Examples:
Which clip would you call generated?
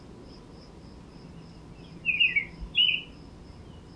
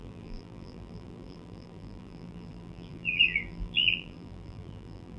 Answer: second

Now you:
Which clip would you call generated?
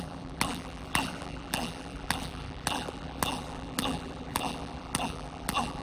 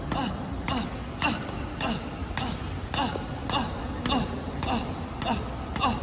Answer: first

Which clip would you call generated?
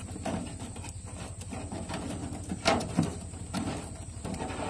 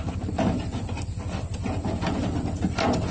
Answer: first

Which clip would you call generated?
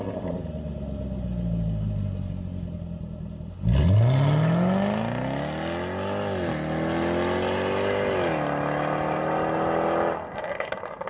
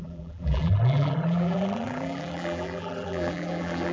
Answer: second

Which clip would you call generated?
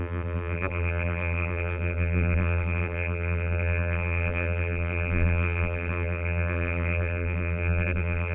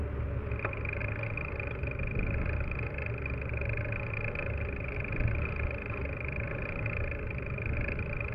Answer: first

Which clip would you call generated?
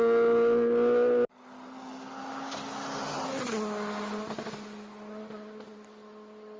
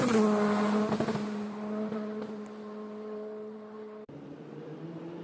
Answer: second